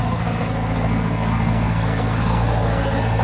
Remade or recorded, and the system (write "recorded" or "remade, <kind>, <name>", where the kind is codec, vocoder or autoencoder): remade, codec, SNAC